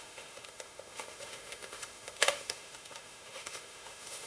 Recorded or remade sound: remade